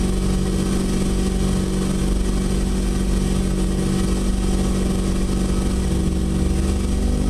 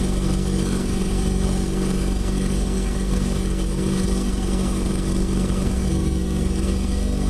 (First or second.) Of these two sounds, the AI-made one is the second